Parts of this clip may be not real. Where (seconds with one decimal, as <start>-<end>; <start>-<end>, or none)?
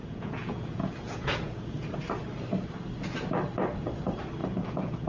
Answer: 0.0-1.9; 4.4-5.1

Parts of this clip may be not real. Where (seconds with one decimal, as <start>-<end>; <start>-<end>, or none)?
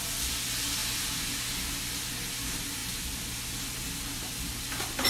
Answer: none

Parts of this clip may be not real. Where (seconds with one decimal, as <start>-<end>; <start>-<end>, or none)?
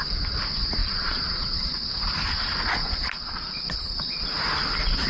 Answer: 0.8-2.0; 2.8-4.2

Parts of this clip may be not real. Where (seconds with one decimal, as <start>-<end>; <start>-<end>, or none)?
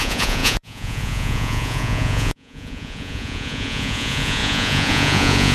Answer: 0.0-5.5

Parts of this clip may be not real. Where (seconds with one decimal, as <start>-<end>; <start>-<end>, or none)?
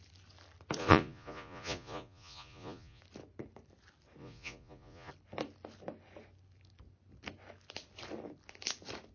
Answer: 0.8-3.0; 4.2-5.1